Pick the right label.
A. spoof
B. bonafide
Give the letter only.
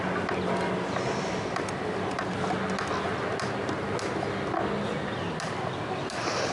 B